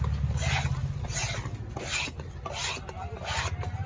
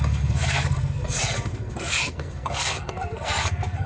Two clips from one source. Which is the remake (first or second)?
second